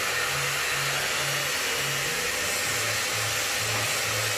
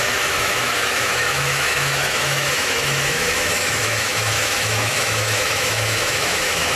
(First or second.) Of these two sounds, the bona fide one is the first